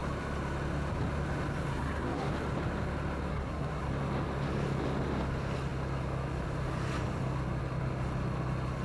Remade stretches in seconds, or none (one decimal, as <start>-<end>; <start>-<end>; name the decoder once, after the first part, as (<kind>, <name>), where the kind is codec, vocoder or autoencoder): 1.7-2.3 (codec, SNAC); 3.3-3.8